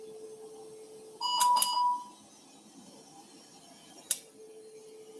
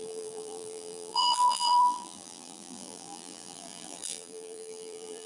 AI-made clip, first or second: second